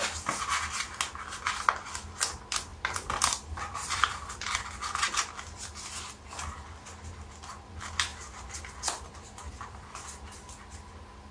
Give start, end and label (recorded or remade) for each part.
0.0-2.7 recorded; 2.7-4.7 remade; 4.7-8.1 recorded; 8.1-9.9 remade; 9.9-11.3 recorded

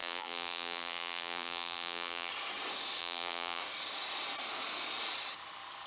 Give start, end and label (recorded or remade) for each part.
0.0-2.3 remade; 2.3-3.0 recorded; 3.0-3.6 remade; 3.6-5.9 recorded

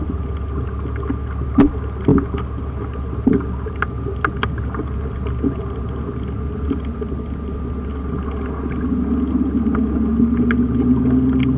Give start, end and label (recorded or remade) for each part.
0.0-11.6 recorded

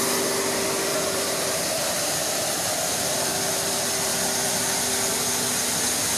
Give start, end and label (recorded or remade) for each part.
0.0-0.9 recorded; 0.9-3.0 remade; 3.0-6.2 recorded

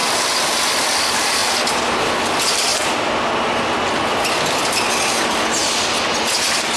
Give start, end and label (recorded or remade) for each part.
0.0-2.7 remade; 2.7-3.9 recorded; 3.9-5.6 remade; 5.6-6.3 recorded; 6.3-6.8 remade

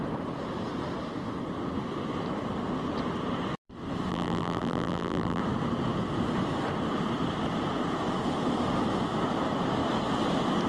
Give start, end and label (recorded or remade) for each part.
0.0-4.1 recorded; 4.1-5.4 remade; 5.4-10.7 recorded